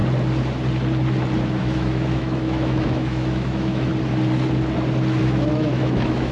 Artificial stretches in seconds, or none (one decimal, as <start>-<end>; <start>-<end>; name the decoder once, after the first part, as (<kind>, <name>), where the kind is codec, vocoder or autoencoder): 1.6-3.9 (autoencoder, DAC-VAE); 5.2-6.3